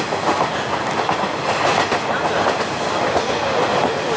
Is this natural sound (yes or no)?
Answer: yes